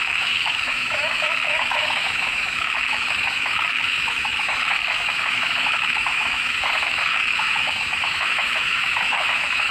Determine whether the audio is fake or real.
fake